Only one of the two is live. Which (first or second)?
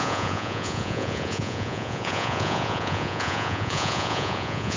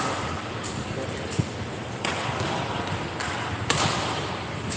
second